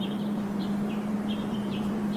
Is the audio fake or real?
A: fake